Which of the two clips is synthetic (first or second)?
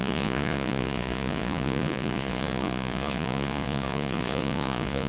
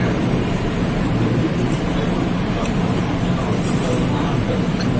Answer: first